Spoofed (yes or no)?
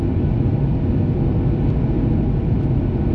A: no